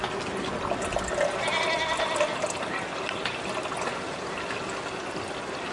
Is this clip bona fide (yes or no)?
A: yes